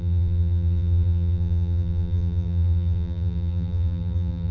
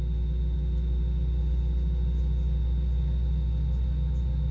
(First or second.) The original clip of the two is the second